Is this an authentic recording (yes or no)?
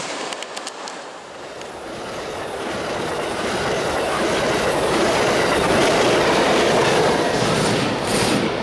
yes